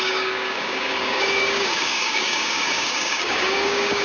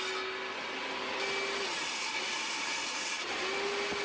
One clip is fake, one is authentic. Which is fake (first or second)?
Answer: first